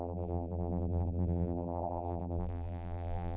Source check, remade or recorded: remade